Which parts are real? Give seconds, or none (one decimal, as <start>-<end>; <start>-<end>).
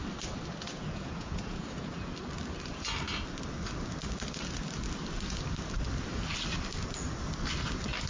0.0-0.7; 2.1-8.1